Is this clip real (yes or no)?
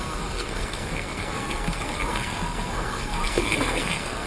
no